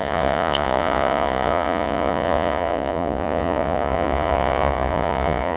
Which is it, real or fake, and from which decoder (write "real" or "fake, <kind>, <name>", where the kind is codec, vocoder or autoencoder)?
fake, vocoder, Vocos